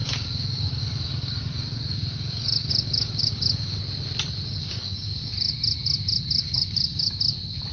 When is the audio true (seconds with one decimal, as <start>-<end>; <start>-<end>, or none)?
3.8-4.6; 5.2-6.4; 7.1-7.7